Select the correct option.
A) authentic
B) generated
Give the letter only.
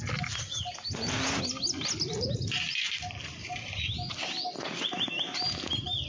A